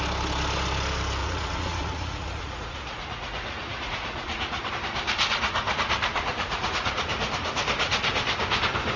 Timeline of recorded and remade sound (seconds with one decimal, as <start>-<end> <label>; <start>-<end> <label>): 0.0-1.2 recorded; 1.2-4.7 remade; 4.7-6.1 recorded; 6.1-6.9 remade; 6.9-9.0 recorded